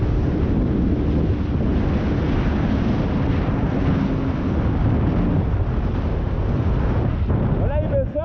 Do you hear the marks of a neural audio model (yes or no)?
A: no